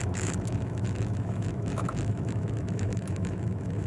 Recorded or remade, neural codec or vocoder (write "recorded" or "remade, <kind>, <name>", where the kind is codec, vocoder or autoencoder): remade, autoencoder, DAC-VAE